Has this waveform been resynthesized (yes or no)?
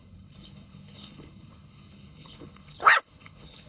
yes